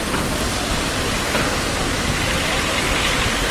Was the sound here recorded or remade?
recorded